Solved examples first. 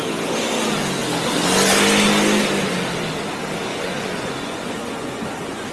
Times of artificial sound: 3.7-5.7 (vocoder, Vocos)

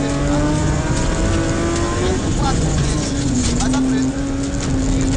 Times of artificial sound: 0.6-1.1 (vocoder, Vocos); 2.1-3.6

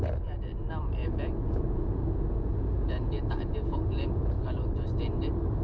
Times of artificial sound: 1.0-4.4 (vocoder, Vocos)